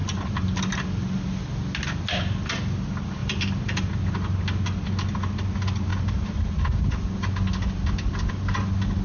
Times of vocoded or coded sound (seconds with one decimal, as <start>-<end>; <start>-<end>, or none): 3.2-3.9